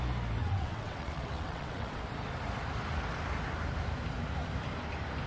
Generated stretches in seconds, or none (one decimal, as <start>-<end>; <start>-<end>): 0.4-2.0